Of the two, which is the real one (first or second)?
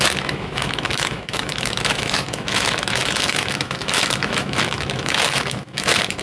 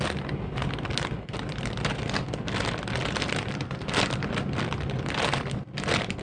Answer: second